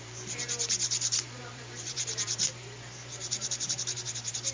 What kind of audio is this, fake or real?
fake